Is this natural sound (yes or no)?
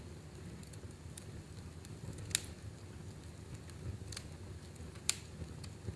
yes